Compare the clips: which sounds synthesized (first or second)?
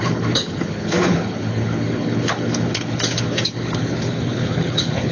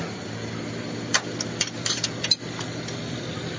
first